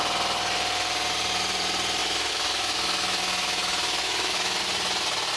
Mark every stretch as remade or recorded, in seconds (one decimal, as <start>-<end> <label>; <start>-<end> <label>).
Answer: 0.0-2.0 recorded; 2.0-4.6 remade; 4.6-5.4 recorded